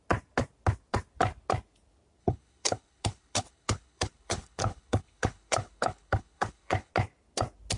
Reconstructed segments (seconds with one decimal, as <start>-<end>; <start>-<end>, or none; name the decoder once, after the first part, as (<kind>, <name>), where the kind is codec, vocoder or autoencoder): 2.2-6.9 (codec, HILCodec)